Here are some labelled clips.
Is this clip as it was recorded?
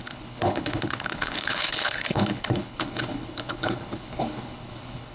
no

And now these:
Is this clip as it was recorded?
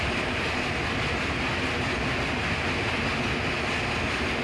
yes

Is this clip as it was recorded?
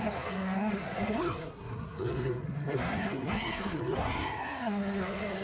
no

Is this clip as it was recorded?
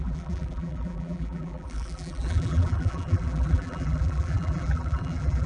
no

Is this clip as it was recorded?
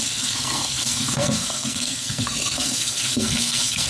no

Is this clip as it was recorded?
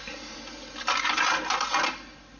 yes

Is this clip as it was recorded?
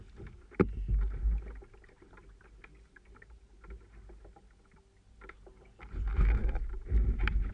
yes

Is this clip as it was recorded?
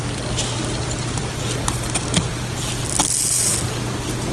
yes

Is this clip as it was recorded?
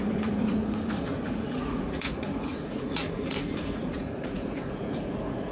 no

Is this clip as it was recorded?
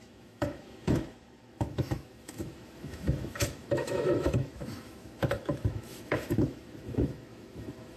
no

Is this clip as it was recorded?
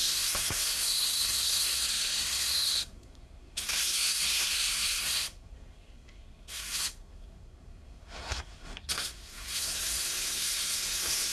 no